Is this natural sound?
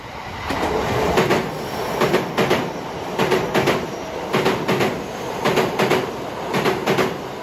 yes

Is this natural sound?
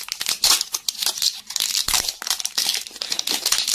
no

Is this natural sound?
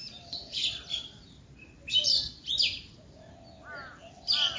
yes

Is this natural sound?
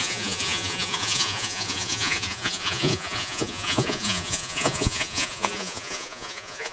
no